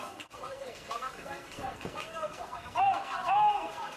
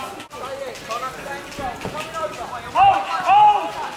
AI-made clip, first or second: first